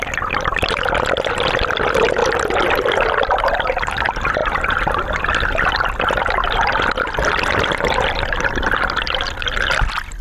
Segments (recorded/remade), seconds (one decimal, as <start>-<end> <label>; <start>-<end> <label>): 0.0-2.2 remade; 2.2-3.9 recorded; 3.9-4.4 remade; 4.4-5.7 recorded; 5.7-10.2 remade